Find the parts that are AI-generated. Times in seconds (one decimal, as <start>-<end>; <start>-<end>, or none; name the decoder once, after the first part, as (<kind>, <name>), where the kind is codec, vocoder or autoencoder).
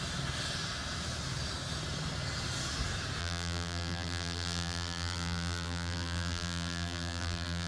3.2-7.7 (vocoder, BigVGAN v2)